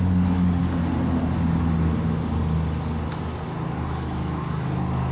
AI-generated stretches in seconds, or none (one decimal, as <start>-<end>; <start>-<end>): 0.0-0.6; 3.7-5.1